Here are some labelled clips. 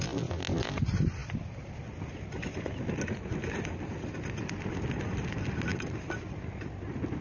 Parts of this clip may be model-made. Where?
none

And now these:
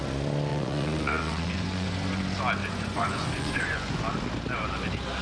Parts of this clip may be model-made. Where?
0.5-2.2 (vocoder, Vocos); 2.6-4.0

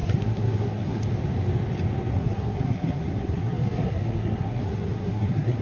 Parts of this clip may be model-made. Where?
0.0-1.0 (codec, SNAC); 2.1-5.6

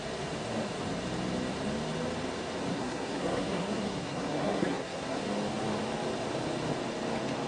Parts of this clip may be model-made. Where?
2.7-5.2 (codec, SNAC)

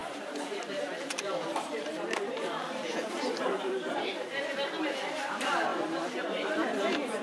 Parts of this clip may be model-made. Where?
0.0-4.3 (vocoder, BigVGAN v2); 5.7-6.3